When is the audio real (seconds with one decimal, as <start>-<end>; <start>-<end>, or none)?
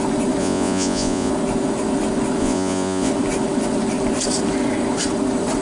0.0-0.4; 1.3-2.4; 3.1-5.6